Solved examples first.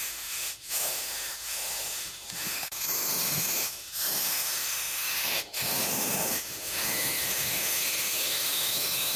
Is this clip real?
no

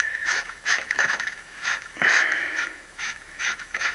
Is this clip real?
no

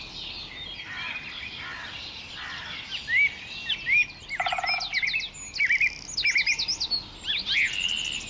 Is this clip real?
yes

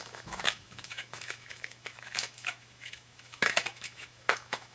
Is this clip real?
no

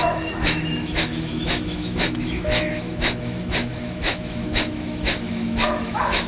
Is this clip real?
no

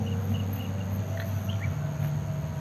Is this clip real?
yes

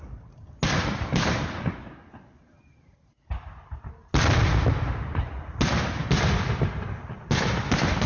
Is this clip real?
yes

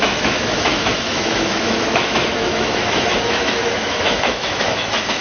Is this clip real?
no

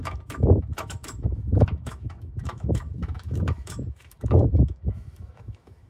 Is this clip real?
no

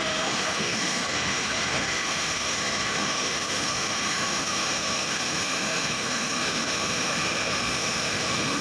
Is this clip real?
no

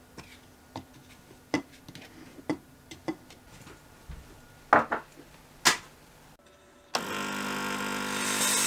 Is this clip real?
yes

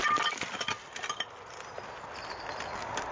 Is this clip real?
yes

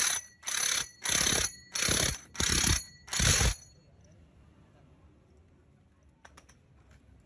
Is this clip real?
yes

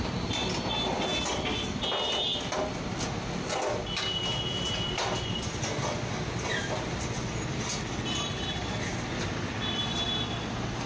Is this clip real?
yes